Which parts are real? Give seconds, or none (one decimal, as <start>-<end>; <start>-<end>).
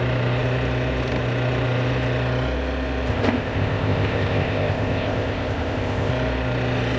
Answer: 0.0-3.1; 6.1-7.0